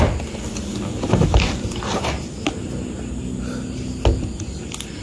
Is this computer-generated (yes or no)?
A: no